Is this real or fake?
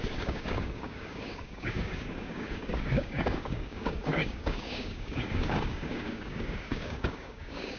fake